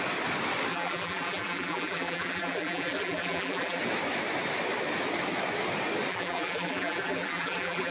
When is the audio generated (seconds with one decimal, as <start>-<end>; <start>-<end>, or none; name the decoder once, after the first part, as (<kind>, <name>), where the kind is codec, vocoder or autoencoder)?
0.7-3.8 (vocoder, BigVGAN v2); 6.1-7.9